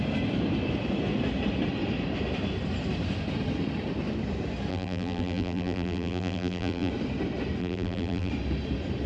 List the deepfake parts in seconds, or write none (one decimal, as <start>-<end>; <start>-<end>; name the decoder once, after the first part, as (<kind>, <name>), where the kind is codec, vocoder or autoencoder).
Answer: 4.7-6.9 (vocoder, BigVGAN v2); 7.6-8.3